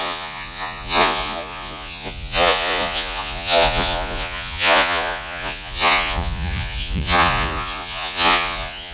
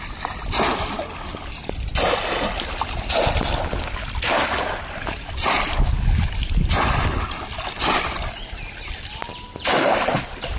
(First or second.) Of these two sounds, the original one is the second